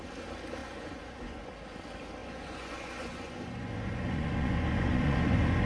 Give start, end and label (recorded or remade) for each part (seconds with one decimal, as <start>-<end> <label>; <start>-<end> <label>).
0.0-0.6 recorded; 0.6-1.5 remade; 1.5-2.2 recorded; 2.2-5.7 remade

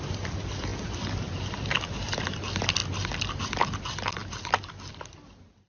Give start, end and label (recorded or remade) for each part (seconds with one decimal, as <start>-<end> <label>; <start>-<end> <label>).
0.0-5.7 recorded

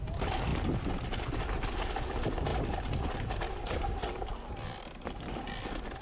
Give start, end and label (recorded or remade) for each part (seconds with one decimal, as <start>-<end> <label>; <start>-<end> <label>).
0.0-6.0 recorded

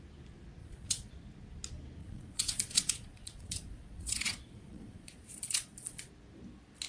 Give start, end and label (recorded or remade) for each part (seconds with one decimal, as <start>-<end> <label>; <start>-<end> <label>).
0.0-0.6 recorded; 0.6-1.1 remade; 1.1-2.0 recorded; 2.0-6.1 remade; 6.1-6.9 recorded

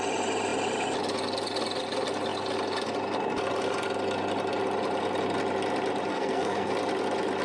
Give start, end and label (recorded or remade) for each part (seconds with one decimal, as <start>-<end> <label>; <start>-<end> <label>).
0.0-6.1 recorded; 6.1-6.7 remade; 6.7-7.4 recorded

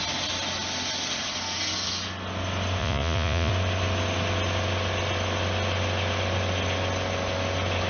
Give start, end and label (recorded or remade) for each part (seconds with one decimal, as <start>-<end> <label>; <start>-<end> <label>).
0.0-2.8 recorded; 2.8-3.5 remade; 3.5-7.9 recorded

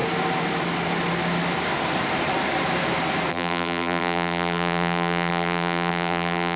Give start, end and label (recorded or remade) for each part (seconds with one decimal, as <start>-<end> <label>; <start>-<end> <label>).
0.0-3.3 recorded; 3.3-6.6 remade